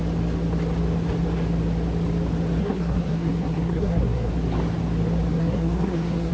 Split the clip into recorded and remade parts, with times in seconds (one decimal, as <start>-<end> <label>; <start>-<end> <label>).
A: 0.0-2.6 recorded; 2.6-4.3 remade; 4.3-5.4 recorded; 5.4-6.3 remade